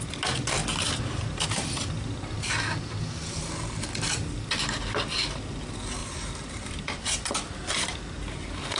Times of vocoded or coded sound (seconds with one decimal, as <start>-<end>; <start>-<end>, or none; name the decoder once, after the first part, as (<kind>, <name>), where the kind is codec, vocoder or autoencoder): 6.0-7.3 (vocoder, BigVGAN v2)

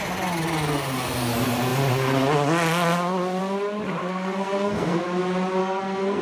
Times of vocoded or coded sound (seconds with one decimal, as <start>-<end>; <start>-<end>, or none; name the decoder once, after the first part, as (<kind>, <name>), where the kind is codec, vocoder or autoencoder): 4.0-5.0 (codec, SNAC); 5.6-6.2

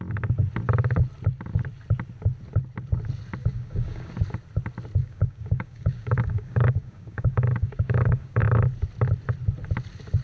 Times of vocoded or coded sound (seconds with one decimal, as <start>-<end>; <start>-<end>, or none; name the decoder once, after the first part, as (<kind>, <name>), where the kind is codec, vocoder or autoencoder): 3.4-4.1 (codec, DAC); 5.0-8.4

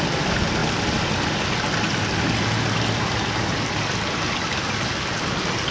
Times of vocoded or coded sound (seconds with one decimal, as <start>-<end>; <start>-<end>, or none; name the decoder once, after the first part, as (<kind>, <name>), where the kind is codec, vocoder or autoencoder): none

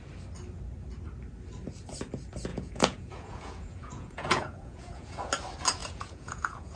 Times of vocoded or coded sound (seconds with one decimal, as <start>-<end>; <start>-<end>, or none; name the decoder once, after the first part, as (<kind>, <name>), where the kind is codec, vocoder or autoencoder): 2.5-5.3 (vocoder, Vocos); 5.8-6.8

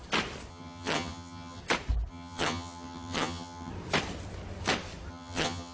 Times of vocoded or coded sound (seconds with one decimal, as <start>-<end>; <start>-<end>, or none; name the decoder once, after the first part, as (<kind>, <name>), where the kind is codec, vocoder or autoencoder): 0.5-1.6 (vocoder, HiFi-GAN); 2.1-3.7; 5.1-5.7